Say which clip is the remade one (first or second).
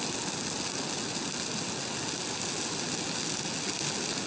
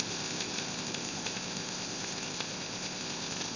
second